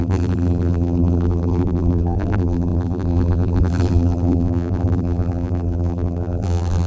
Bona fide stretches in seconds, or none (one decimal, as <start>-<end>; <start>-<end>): none